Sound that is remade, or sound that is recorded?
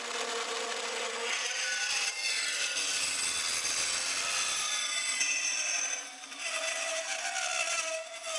recorded